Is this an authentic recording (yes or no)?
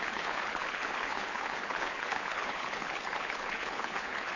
no